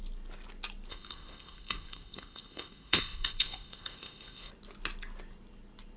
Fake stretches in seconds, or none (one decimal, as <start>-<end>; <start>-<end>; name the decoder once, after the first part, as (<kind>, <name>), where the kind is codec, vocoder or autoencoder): 0.9-4.5 (codec, ZipCodec)